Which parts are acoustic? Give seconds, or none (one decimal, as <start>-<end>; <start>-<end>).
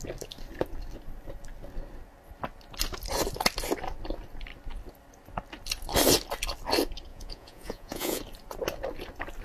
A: 0.0-7.1; 8.2-9.4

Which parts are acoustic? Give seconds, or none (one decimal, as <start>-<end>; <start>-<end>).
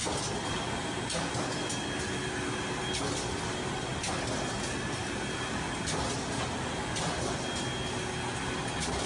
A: 0.0-9.1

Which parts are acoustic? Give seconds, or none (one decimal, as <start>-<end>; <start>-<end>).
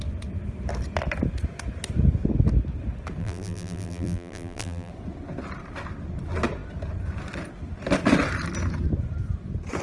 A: 0.0-3.2; 4.9-9.8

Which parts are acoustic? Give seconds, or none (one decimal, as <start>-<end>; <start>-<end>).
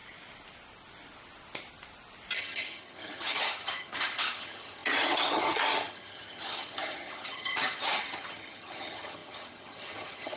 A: 0.0-2.4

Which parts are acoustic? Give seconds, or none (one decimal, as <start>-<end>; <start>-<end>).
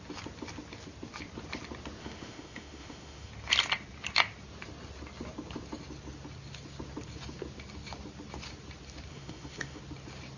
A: 0.0-2.0; 3.3-9.1; 9.8-10.4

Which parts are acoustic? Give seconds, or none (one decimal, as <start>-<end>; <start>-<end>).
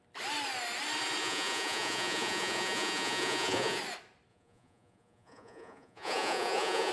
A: 0.0-1.2; 3.8-4.3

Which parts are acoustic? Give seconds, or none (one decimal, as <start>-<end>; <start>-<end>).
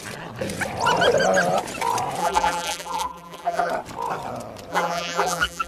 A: 0.0-2.2; 3.7-4.7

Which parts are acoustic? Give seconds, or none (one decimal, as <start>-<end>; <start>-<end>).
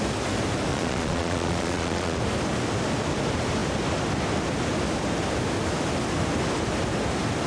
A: 0.0-0.7; 2.2-7.5